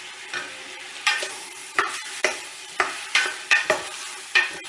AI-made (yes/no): yes